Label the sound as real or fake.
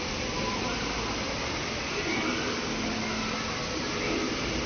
real